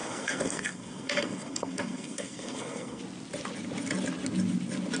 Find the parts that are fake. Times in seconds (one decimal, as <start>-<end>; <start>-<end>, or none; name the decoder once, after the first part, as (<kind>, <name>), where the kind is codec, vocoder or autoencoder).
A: 0.0-3.0 (codec, SNAC)